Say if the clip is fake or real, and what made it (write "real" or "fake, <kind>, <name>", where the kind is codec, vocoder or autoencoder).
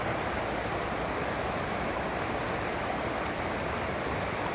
real